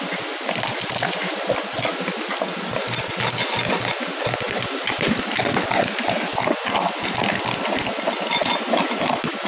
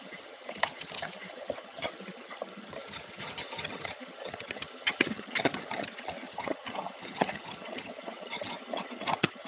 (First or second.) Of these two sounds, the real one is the first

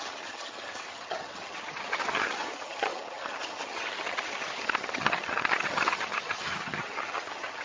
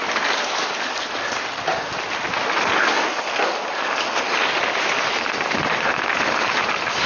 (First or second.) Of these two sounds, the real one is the second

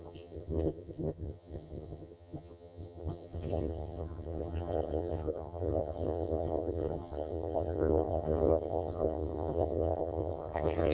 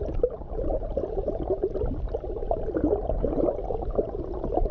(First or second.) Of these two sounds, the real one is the second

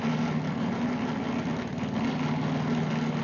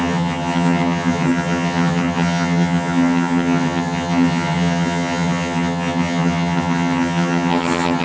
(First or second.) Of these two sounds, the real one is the first